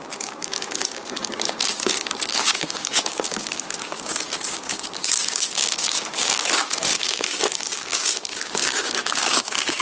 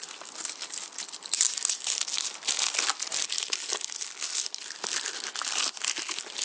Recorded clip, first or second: second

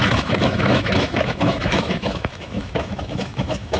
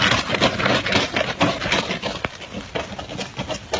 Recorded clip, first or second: second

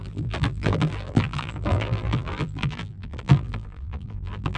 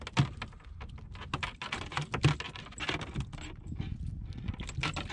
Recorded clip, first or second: second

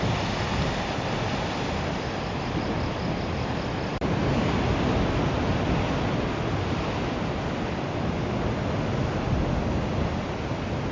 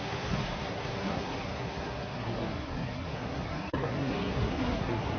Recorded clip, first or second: first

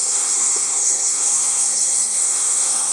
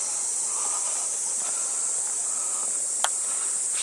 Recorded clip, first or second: second